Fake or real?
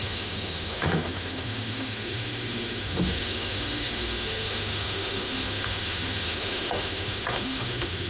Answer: fake